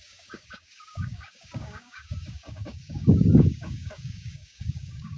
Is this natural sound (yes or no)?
no